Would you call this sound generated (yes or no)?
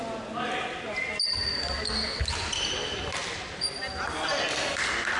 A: no